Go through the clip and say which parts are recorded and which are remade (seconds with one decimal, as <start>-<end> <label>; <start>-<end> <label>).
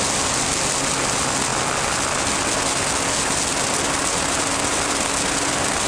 0.0-5.9 recorded